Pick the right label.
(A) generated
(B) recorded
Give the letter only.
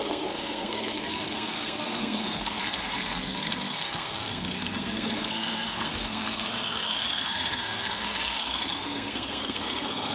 A